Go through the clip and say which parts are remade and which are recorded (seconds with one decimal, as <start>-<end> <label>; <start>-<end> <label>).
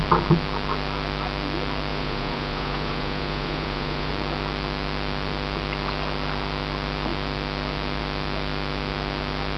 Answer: 0.0-1.9 recorded; 1.9-4.1 remade; 4.1-9.6 recorded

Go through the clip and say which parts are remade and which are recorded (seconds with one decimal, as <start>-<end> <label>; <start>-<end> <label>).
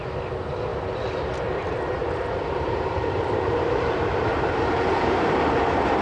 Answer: 0.0-2.0 recorded; 2.0-5.6 remade; 5.6-6.0 recorded